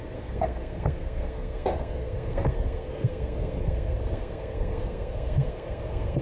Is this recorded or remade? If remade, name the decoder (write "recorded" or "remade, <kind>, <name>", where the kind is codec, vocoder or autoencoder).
remade, codec, SNAC